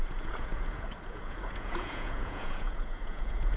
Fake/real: fake